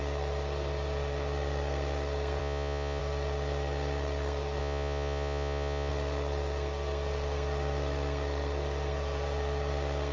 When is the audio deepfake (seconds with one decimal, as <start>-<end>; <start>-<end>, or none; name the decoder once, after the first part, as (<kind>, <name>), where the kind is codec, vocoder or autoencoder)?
0.0-2.4 (codec, SNAC); 3.0-4.6; 5.9-10.1